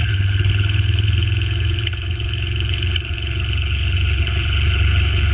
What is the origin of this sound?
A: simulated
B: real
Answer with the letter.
A